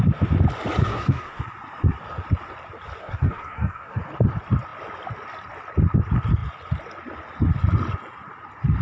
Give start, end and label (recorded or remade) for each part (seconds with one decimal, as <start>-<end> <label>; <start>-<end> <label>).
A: 0.0-0.8 recorded; 0.8-1.4 remade; 1.4-3.0 recorded; 3.0-4.0 remade; 4.0-8.8 recorded